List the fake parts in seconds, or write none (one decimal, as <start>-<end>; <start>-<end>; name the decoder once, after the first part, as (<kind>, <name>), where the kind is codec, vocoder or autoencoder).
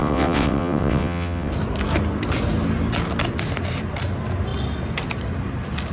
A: 0.0-1.5 (vocoder, WaveNeXt)